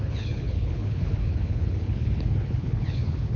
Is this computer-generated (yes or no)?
yes